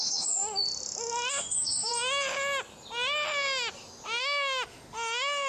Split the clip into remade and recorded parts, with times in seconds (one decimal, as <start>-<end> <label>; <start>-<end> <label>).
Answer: 0.0-0.4 remade; 0.4-1.3 recorded; 1.3-1.9 remade; 1.9-4.2 recorded; 4.2-5.5 remade